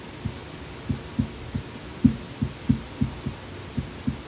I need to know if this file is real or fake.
real